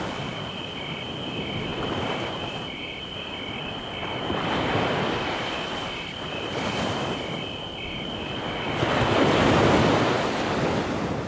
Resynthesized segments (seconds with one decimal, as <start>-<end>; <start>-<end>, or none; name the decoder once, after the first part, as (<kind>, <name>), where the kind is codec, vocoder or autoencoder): 1.7-2.9 (vocoder, BigVGAN v2); 4.0-4.7